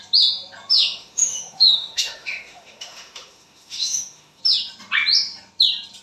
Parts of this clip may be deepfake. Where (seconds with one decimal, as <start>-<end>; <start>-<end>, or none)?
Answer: 0.8-4.4

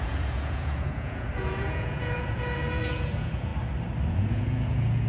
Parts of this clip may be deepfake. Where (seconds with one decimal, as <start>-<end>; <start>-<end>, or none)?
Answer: 0.0-3.5; 4.1-5.1

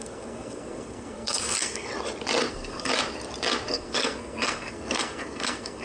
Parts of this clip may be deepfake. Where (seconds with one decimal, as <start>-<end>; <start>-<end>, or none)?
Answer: 0.0-1.9; 2.5-2.9; 3.7-5.8

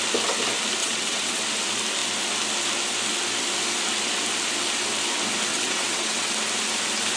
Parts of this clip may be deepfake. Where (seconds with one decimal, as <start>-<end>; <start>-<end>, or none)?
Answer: 0.8-1.4; 5.5-6.3

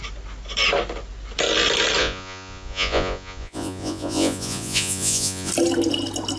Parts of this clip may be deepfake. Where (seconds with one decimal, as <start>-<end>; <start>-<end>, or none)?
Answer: 2.0-5.5

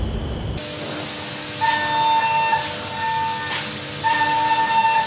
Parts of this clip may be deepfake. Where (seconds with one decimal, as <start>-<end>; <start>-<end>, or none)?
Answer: none